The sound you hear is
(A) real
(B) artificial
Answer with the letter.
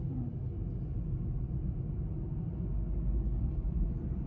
A